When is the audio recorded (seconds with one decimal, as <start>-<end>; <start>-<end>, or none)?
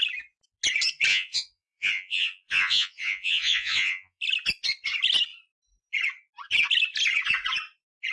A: 0.0-1.1; 4.2-8.1